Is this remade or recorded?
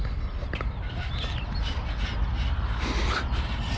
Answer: recorded